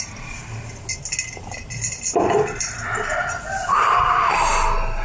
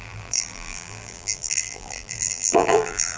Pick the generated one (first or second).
second